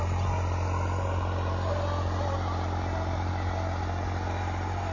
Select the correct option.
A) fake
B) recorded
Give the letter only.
B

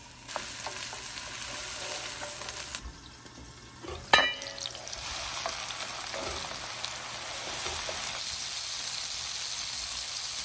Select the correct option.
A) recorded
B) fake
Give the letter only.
A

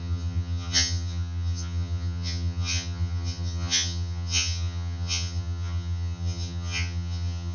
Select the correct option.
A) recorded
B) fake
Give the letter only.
B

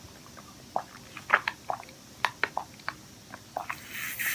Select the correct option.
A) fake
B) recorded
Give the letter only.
A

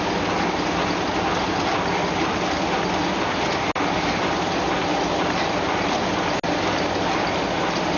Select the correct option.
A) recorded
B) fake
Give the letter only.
A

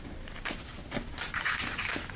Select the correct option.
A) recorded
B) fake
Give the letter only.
A